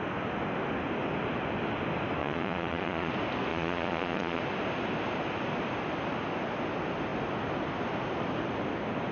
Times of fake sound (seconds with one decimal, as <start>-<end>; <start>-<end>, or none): 2.2-3.1; 3.5-4.4